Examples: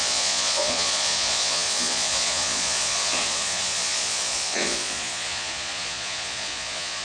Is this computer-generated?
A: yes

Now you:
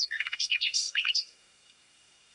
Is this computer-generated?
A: yes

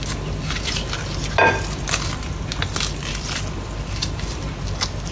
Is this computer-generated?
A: no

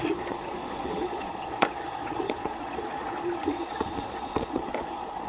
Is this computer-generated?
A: yes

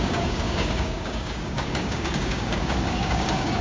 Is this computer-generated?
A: yes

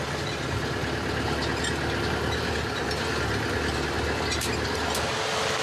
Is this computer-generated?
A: no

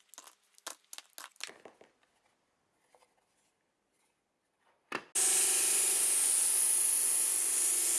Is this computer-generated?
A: no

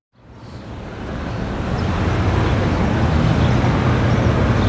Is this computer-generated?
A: no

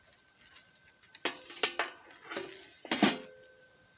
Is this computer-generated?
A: no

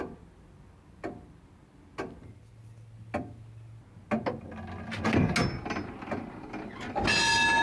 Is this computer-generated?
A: no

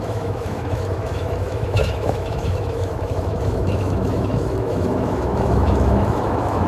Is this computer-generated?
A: yes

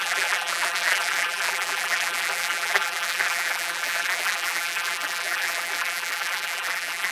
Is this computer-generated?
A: yes